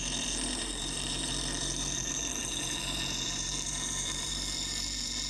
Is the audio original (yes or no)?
no